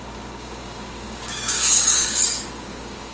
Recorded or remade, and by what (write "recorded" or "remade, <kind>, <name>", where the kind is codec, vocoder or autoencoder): remade, codec, DAC